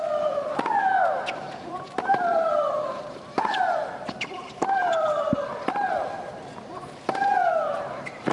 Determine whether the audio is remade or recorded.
remade